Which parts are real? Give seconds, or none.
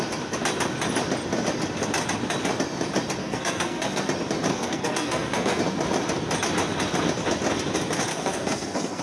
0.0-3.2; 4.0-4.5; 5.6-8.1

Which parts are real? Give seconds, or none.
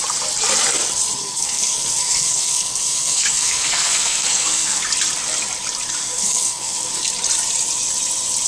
0.0-1.2; 4.8-6.0; 6.9-8.5